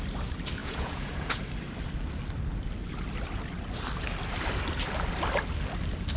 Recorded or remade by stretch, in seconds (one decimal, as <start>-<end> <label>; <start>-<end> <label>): 0.0-0.6 recorded; 0.6-1.4 remade; 1.4-6.2 recorded